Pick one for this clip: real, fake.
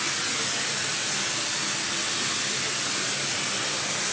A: real